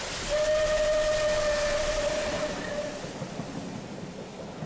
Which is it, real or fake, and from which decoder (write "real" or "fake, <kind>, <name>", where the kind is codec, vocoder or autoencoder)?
real